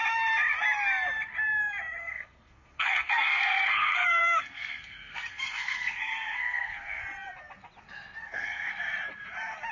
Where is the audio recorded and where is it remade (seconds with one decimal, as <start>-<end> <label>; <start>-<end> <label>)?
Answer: 0.0-2.0 recorded; 2.0-7.0 remade; 7.0-8.2 recorded; 8.2-8.7 remade; 8.7-9.7 recorded